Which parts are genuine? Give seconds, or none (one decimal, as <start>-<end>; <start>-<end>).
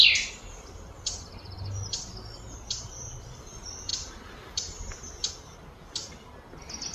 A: 0.0-6.9